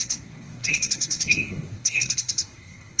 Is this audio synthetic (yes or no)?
yes